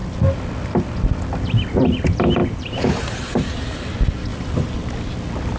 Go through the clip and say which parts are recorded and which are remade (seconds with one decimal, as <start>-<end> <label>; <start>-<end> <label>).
0.0-2.4 recorded; 2.4-3.5 remade; 3.5-5.6 recorded

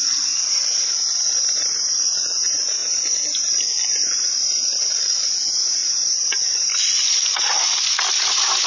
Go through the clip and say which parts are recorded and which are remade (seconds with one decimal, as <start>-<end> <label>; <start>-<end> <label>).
0.0-2.8 recorded; 2.8-5.2 remade; 5.2-5.8 recorded; 5.8-7.8 remade; 7.8-8.7 recorded